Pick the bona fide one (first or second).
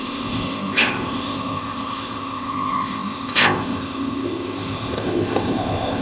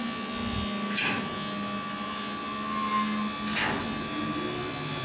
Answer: second